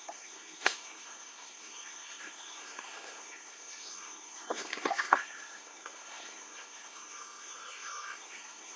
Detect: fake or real fake